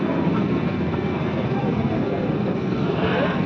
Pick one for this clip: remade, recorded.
remade